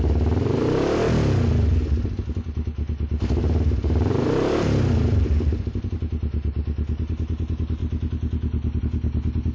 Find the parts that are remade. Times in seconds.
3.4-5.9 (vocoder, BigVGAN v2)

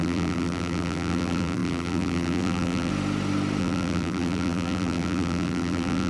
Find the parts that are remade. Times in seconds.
0.0-2.9 (vocoder, BigVGAN v2); 3.6-6.1